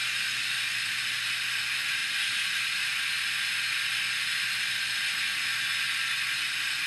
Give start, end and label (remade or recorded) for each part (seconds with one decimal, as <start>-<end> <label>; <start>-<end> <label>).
0.0-6.9 recorded